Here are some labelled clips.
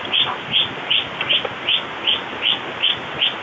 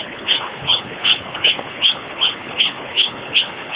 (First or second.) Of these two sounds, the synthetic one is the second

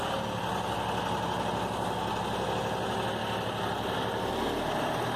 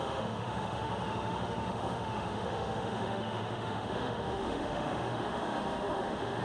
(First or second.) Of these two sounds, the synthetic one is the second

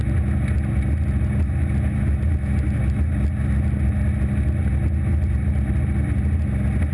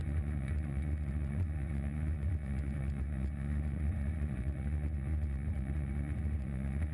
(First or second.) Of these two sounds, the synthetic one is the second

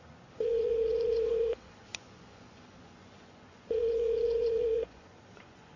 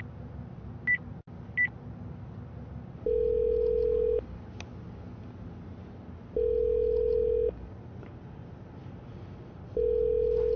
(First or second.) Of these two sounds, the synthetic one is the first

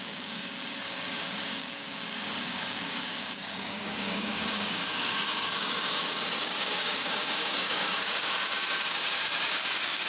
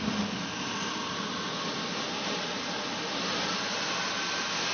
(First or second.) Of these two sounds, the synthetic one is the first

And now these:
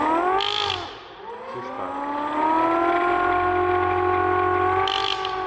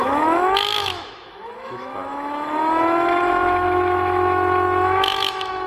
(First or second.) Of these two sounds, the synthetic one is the second